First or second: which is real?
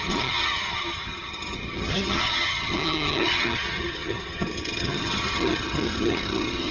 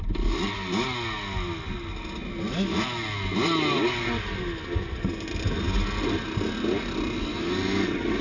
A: second